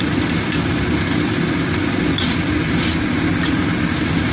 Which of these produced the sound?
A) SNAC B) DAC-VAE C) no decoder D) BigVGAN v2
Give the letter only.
C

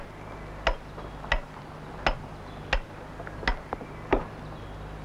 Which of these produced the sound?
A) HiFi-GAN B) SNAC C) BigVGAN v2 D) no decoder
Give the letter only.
D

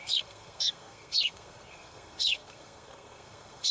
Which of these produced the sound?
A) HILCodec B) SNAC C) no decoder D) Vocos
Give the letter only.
B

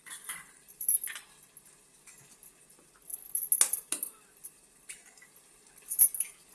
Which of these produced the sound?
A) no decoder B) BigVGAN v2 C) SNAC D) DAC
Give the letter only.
A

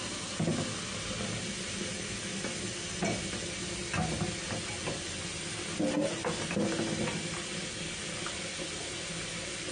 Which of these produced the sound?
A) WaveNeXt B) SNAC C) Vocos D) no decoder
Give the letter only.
D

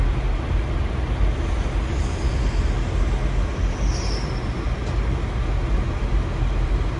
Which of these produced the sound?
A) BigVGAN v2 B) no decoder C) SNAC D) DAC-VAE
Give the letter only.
B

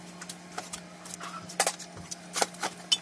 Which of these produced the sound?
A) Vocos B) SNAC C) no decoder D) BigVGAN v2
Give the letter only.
C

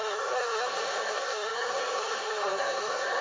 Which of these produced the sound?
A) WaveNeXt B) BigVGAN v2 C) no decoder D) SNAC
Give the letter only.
D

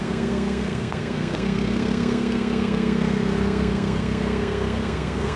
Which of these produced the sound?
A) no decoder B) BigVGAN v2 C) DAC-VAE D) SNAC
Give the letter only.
D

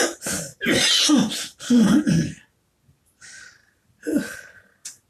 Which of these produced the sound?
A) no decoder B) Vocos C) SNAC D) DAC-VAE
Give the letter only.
A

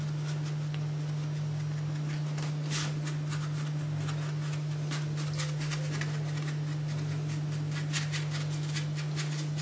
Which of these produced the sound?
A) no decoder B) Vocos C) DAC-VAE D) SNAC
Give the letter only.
A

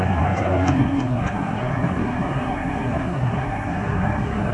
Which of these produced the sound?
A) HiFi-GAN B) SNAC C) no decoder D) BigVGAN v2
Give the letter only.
B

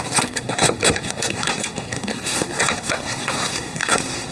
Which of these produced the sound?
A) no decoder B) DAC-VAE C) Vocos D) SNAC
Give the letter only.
D